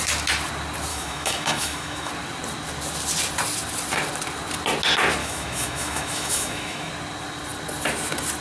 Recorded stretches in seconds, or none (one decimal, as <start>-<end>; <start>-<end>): 0.0-0.9; 2.1-5.2; 6.9-8.4